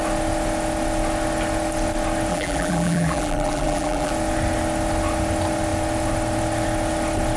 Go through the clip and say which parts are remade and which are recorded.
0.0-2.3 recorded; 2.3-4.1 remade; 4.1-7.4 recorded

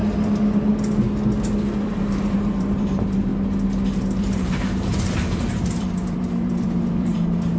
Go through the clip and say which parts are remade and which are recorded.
0.0-1.9 recorded; 1.9-3.3 remade; 3.3-4.0 recorded; 4.0-7.6 remade

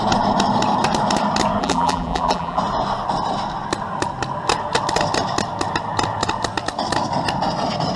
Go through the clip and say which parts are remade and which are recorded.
0.0-1.6 recorded; 1.6-2.6 remade; 2.6-8.0 recorded

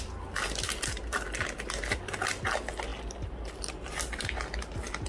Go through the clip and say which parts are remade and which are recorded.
0.0-2.9 recorded; 2.9-3.7 remade; 3.7-5.1 recorded

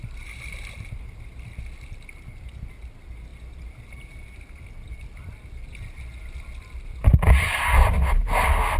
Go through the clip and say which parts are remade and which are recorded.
0.0-8.8 recorded

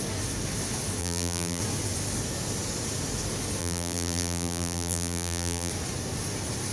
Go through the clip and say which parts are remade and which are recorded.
0.0-1.0 recorded; 1.0-1.6 remade; 1.6-3.6 recorded; 3.6-5.7 remade; 5.7-6.7 recorded

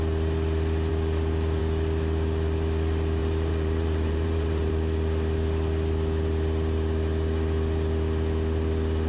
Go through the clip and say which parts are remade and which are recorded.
0.0-3.2 recorded; 3.2-4.7 remade; 4.7-9.1 recorded